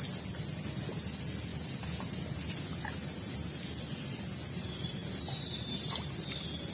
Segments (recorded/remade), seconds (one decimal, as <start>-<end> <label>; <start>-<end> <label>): 0.0-6.7 recorded